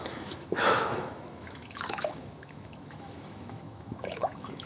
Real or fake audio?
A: fake